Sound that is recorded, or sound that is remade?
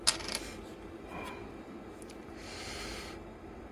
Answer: recorded